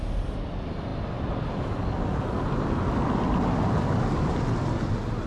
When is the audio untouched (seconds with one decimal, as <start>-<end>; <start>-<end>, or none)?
0.0-5.3